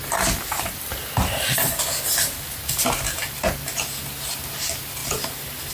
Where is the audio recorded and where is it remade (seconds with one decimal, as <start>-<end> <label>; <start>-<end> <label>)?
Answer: 0.0-5.7 recorded